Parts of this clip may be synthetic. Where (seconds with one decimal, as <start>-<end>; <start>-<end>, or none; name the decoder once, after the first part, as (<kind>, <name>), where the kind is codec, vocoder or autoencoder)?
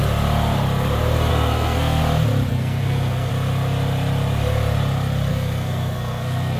1.3-2.0 (codec, SNAC); 2.5-3.3; 5.3-6.6